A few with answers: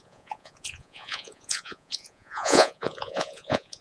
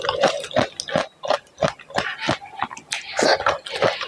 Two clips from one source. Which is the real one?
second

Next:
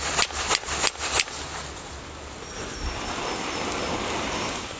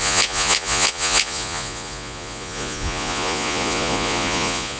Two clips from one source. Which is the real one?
first